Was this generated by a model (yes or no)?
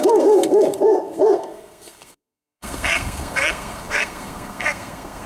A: yes